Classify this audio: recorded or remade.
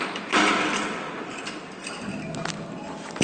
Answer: recorded